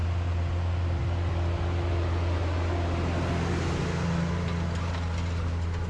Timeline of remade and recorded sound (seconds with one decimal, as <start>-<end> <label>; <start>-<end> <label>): 0.0-5.9 recorded